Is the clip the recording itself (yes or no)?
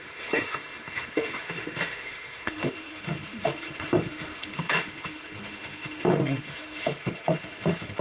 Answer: no